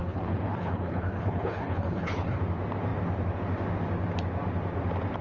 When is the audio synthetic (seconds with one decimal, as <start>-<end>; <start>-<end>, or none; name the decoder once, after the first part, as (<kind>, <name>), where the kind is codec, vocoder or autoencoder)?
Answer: 0.0-2.4 (codec, HILCodec)